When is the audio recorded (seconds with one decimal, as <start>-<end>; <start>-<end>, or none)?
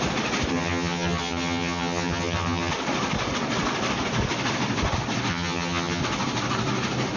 0.0-0.5; 2.7-5.3; 6.0-7.2